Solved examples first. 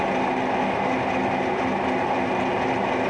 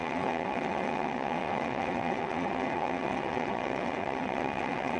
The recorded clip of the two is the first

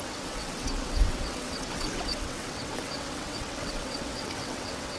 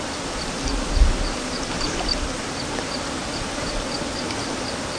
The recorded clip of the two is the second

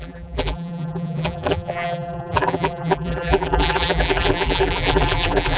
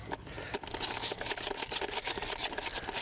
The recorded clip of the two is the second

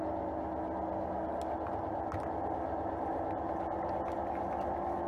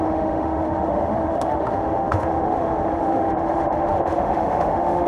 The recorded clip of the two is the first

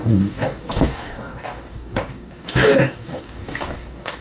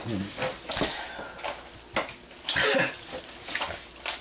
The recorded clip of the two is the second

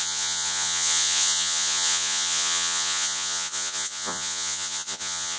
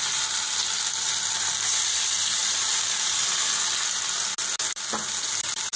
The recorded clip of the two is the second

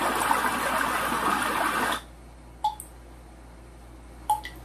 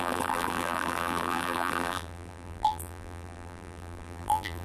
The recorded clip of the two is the first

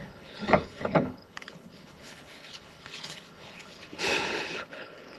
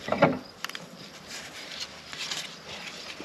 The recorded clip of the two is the second